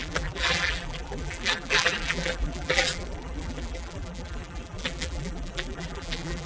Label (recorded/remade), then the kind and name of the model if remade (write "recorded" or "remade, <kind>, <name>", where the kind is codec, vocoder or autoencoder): remade, vocoder, BigVGAN v2